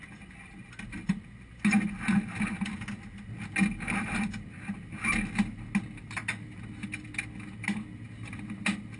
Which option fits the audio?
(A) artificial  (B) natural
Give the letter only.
B